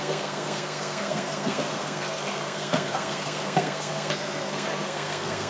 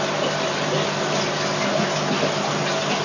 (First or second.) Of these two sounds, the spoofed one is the first